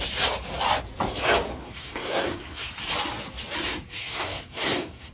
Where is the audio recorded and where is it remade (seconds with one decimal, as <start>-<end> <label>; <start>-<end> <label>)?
0.0-1.5 recorded; 1.5-2.7 remade; 2.7-4.0 recorded; 4.0-5.1 remade